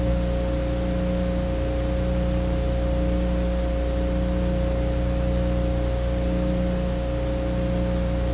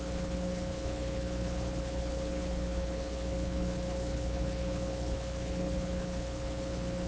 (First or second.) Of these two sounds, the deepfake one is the second